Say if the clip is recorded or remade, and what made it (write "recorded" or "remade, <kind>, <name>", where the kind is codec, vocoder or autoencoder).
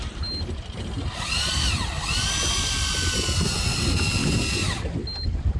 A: recorded